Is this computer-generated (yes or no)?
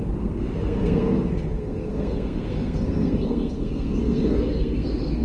yes